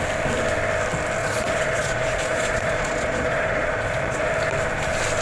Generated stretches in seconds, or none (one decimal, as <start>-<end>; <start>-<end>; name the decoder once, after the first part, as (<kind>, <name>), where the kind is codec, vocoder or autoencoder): 1.2-4.3 (vocoder, Vocos)